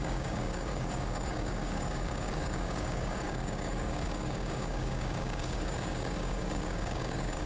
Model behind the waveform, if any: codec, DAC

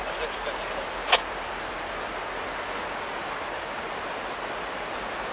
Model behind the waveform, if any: none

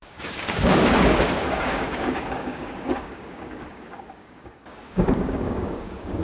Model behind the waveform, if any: codec, DAC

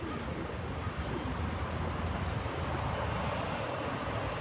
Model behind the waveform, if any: none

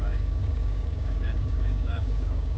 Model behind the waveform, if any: codec, DAC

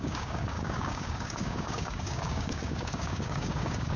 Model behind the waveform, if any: codec, DAC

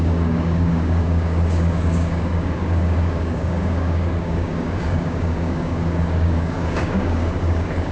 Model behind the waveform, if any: codec, DAC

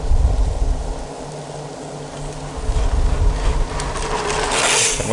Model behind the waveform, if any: none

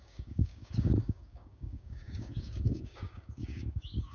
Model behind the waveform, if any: codec, DAC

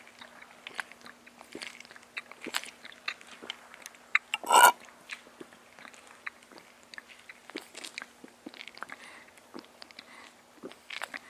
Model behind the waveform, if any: none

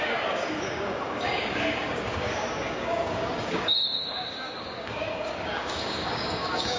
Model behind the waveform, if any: codec, DAC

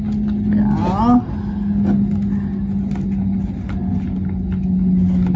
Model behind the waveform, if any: none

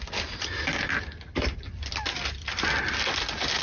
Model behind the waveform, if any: none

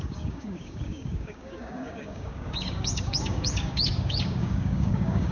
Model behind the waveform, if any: codec, DAC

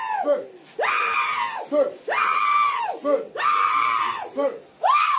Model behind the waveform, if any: none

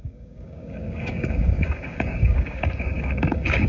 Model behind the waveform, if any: codec, DAC